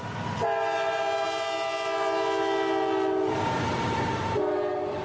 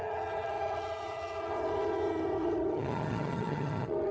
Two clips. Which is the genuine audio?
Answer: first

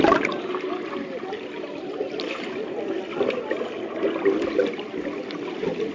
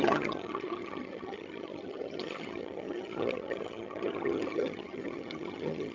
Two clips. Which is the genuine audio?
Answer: first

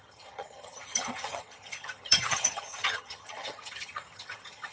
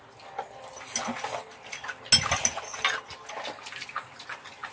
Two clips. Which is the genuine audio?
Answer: second